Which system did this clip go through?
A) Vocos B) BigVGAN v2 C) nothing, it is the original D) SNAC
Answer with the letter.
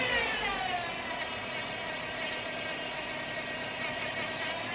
C